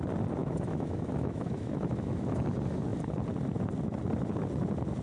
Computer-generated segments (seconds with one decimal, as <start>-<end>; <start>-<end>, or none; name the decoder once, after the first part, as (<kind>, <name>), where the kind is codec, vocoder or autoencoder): 0.4-2.4 (autoencoder, DAC-VAE)